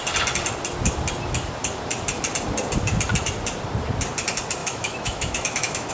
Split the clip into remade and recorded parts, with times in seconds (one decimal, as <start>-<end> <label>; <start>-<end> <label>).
0.0-4.6 recorded; 4.6-5.9 remade